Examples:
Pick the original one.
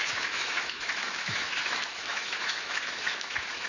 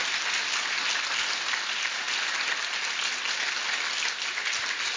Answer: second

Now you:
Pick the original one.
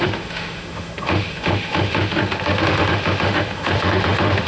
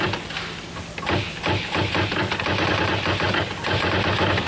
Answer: second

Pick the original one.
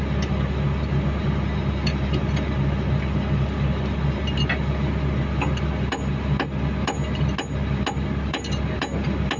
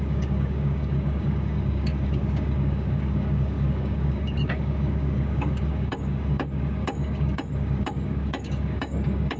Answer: first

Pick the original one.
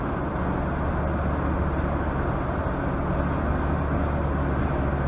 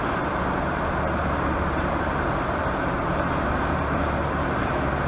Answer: first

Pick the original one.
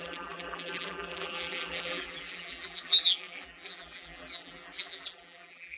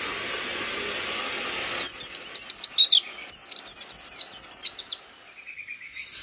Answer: second